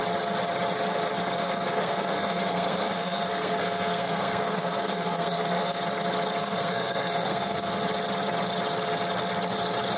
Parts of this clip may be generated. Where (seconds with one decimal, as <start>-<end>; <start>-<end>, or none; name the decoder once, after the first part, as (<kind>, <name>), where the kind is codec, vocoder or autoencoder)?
1.4-5.8 (codec, SNAC); 6.4-7.7